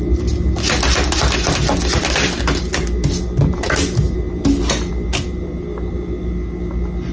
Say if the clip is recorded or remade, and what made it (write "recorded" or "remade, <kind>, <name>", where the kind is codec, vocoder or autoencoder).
recorded